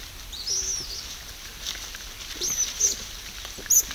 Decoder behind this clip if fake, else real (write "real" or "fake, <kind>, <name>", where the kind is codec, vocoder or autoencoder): real